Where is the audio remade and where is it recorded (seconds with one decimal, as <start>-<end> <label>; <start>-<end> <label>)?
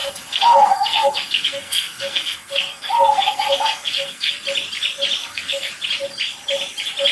0.0-4.3 remade; 4.3-5.2 recorded; 5.2-5.7 remade; 5.7-7.1 recorded